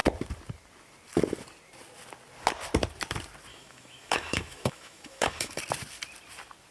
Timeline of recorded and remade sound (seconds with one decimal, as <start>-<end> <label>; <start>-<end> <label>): 0.0-3.5 recorded; 3.5-5.6 remade; 5.6-6.7 recorded